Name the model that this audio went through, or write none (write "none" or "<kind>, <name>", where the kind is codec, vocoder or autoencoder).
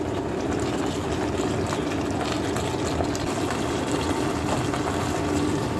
none